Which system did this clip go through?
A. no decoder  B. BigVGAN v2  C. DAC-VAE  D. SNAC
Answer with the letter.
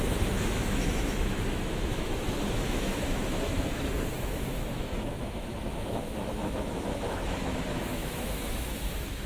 C